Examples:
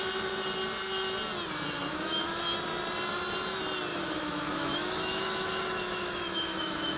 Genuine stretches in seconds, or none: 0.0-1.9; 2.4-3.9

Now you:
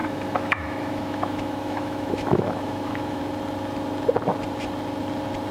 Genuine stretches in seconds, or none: 3.2-5.5

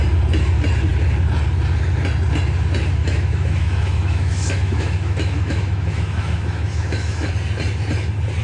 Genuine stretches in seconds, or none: 0.0-3.0; 7.3-8.4

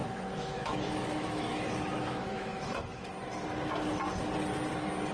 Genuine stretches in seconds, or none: 3.1-5.1

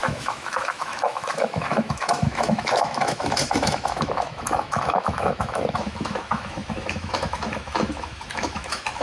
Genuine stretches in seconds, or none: none

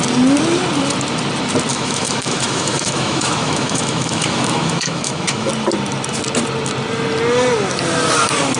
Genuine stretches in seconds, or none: 0.0-1.7; 5.5-8.6

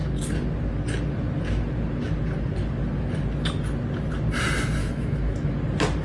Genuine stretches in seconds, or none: 0.0-4.8; 5.5-6.0

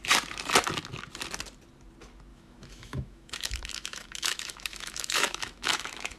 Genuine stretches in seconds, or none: 0.0-2.3